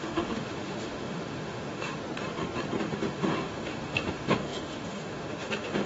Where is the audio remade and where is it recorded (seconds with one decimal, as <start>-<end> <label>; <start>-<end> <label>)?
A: 0.0-2.0 remade; 2.0-2.8 recorded; 2.8-5.9 remade